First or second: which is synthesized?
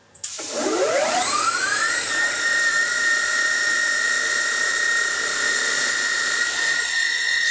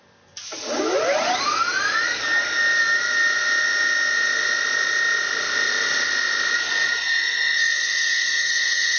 first